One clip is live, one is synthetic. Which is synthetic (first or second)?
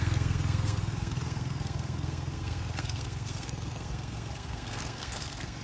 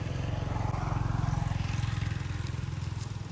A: first